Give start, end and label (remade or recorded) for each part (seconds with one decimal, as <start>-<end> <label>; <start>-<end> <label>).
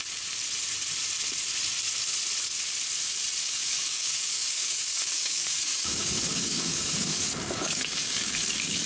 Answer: 0.0-3.4 recorded; 3.4-8.9 remade